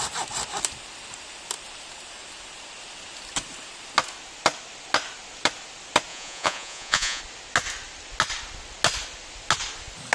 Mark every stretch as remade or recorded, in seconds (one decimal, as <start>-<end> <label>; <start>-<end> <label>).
0.0-6.1 recorded; 6.1-7.2 remade; 7.2-10.1 recorded